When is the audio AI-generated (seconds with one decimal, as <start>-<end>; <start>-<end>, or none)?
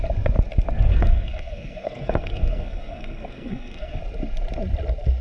0.9-4.0